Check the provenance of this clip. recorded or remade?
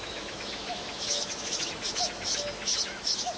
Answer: remade